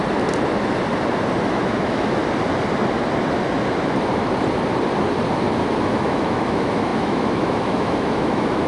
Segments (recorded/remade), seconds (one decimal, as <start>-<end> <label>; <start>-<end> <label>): 0.0-1.4 recorded; 1.4-2.2 remade; 2.2-5.8 recorded; 5.8-8.7 remade